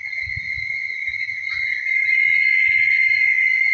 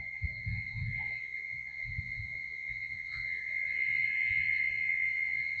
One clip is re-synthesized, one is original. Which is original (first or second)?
first